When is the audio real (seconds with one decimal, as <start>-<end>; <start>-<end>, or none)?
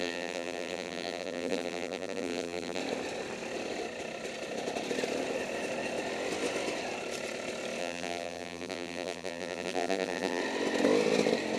2.8-7.8; 10.4-11.6